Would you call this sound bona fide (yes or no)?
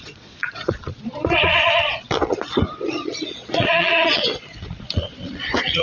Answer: no